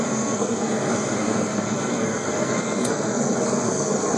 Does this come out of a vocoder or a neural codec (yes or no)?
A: yes